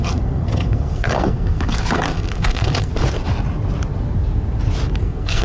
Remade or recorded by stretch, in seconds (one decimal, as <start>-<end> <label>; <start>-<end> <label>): 0.0-2.9 remade; 2.9-5.0 recorded; 5.0-5.4 remade